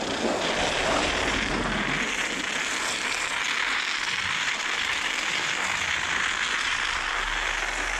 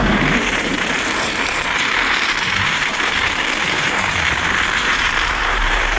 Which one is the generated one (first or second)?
second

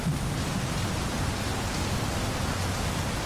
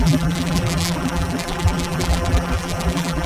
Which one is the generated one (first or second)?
second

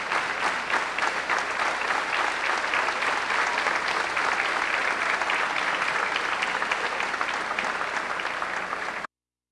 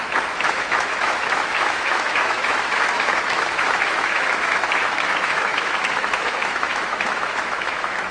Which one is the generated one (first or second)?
second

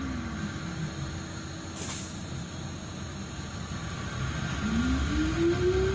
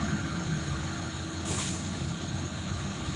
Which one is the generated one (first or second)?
second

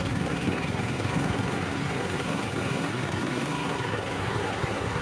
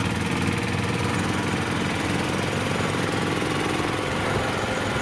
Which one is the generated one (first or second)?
first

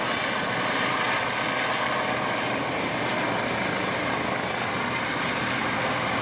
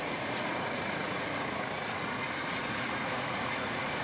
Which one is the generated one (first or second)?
second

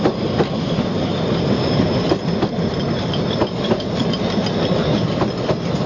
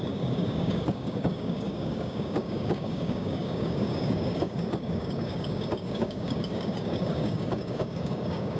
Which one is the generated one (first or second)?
second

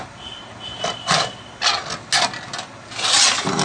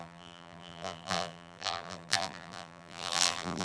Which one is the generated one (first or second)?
second